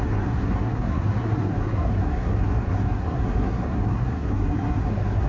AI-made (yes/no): yes